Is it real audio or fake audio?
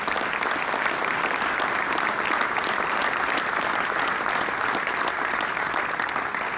real